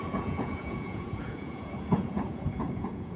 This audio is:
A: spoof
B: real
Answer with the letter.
A